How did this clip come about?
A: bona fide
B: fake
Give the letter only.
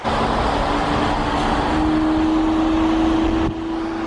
A